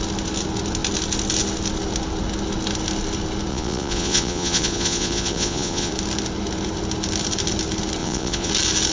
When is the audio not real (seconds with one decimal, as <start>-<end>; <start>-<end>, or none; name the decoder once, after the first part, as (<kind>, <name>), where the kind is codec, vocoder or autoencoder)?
3.5-5.9 (vocoder, Vocos); 8.0-8.5